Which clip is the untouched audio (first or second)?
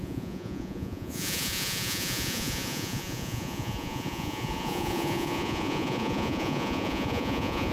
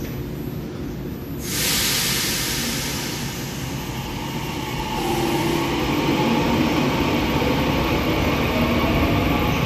second